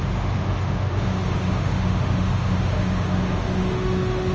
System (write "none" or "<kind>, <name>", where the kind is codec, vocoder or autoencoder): autoencoder, DAC-VAE